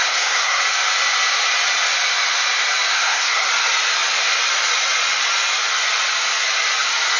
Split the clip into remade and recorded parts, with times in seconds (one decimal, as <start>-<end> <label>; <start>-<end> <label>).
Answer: 0.0-0.6 remade; 0.6-2.9 recorded; 2.9-3.5 remade; 3.5-7.2 recorded